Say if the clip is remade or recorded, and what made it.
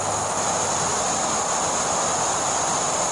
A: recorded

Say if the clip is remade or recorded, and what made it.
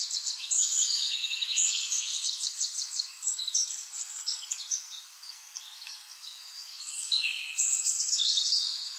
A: remade, codec, SNAC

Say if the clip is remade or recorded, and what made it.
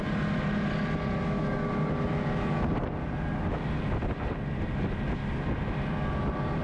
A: recorded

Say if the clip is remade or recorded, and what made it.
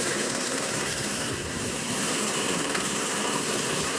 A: remade, codec, SNAC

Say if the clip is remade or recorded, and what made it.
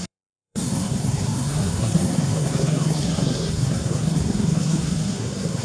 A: remade, codec, SNAC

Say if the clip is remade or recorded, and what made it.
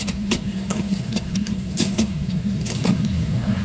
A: remade, codec, SNAC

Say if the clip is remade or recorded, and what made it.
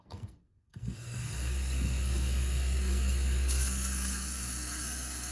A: remade, codec, SNAC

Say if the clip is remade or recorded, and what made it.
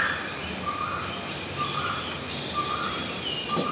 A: recorded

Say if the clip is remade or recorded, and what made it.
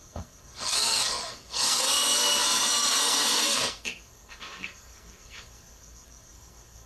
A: remade, codec, SNAC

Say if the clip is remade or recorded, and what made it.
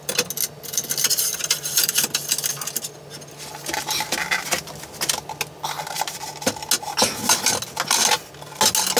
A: recorded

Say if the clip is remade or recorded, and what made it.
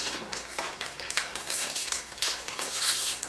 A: remade, codec, SNAC